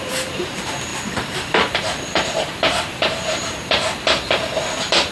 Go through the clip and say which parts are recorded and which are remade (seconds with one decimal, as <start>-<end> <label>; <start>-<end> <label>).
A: 0.0-5.1 remade

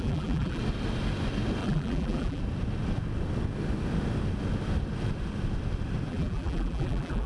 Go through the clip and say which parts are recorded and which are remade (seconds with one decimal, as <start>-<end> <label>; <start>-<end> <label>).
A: 0.0-0.6 remade; 0.6-1.6 recorded; 1.6-2.4 remade; 2.4-6.1 recorded; 6.1-7.3 remade

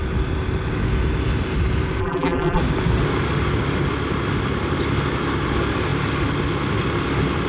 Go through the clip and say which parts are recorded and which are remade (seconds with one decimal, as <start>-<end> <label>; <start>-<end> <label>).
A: 0.0-2.0 recorded; 2.0-2.6 remade; 2.6-7.5 recorded

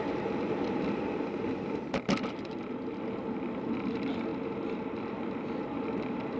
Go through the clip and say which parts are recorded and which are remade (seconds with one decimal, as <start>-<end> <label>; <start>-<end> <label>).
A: 0.0-6.4 recorded

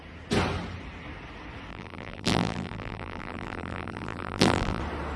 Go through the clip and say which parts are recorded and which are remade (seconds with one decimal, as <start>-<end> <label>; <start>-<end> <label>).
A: 0.0-1.7 recorded; 1.7-4.8 remade; 4.8-5.2 recorded